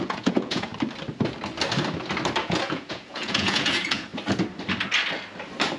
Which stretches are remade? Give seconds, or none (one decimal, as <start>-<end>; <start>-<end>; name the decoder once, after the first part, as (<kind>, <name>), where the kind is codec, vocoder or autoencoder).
0.0-0.7 (vocoder, Vocos); 2.4-4.1